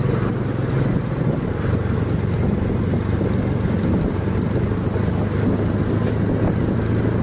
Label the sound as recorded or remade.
recorded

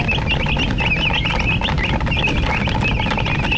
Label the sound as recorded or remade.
recorded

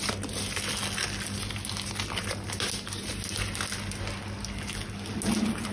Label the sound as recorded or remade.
recorded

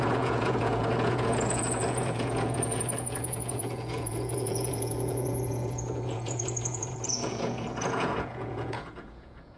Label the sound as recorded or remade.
remade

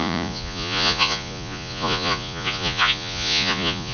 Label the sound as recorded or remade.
remade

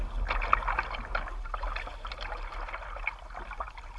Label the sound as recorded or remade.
recorded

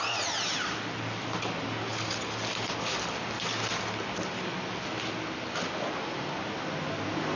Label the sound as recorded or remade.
recorded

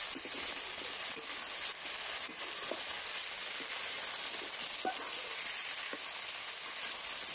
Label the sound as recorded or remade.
recorded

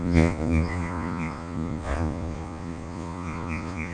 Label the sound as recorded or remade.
remade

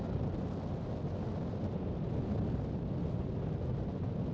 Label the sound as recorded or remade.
recorded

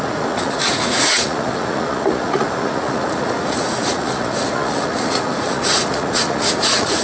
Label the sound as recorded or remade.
remade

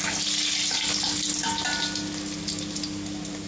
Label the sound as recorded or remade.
recorded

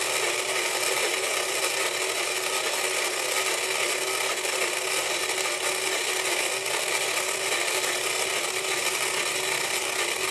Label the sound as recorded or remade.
recorded